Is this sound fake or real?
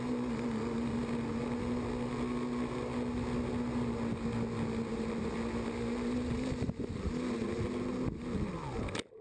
real